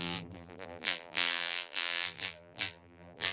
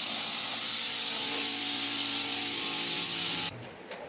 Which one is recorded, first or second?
second